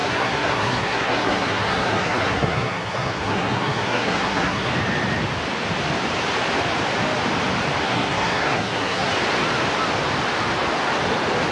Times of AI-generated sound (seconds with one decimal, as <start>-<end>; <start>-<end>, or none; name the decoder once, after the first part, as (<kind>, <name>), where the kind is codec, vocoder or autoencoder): 0.0-4.7 (codec, SNAC); 7.8-9.1